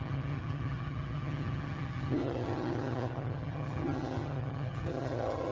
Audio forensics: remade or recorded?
remade